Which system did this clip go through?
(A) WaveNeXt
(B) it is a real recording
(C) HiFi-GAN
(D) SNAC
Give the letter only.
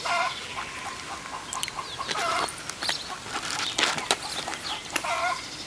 B